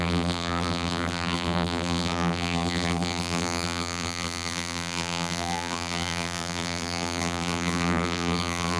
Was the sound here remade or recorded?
remade